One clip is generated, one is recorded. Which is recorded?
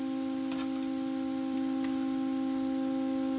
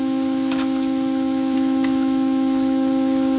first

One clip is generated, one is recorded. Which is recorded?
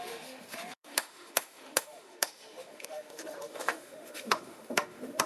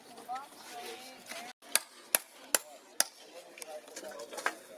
second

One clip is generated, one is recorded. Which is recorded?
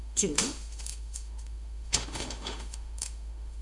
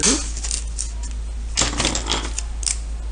second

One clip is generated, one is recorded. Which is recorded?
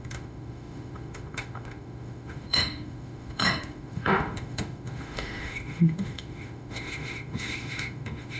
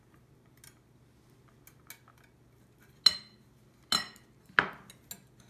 second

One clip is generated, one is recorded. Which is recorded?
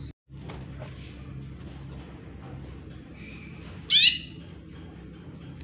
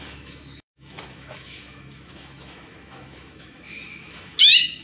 first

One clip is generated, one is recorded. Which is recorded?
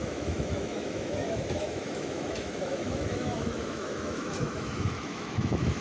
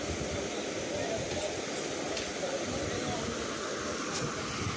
second